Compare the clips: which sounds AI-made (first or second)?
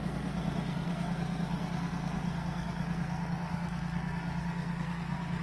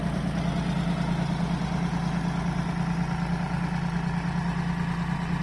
first